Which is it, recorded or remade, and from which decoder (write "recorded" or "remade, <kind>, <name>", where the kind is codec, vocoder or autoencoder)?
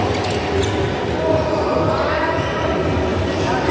recorded